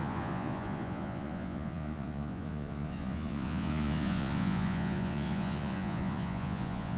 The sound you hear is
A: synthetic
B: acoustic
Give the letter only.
A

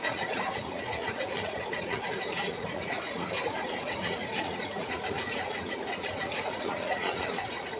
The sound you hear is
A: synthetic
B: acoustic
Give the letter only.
A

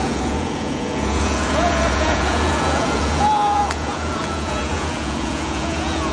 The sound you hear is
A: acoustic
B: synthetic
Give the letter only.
B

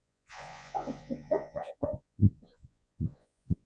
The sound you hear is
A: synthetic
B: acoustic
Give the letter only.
A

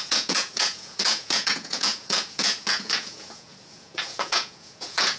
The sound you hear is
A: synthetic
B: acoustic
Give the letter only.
A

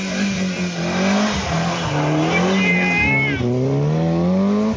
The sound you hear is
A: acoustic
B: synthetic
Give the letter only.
A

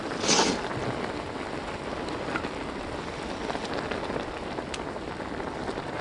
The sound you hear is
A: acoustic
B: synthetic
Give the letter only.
A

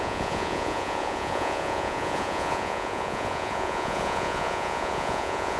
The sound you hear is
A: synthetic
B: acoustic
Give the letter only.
A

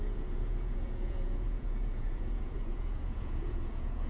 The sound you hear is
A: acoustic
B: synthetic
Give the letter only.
B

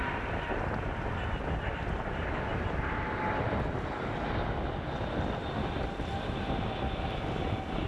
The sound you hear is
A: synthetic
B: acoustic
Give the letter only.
B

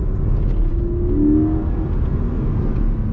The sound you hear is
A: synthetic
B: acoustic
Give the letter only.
B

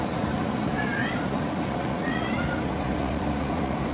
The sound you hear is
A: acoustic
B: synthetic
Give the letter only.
B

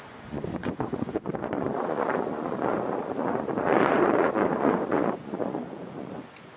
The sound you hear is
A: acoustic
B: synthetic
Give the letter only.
B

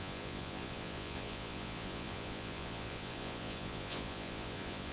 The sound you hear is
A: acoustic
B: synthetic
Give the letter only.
B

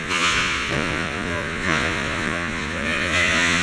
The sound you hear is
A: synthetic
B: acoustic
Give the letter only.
A